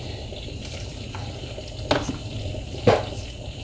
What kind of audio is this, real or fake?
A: real